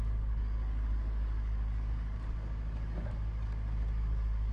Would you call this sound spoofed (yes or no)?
yes